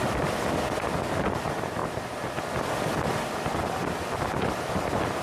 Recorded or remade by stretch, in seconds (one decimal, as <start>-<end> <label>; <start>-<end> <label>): 0.0-5.2 recorded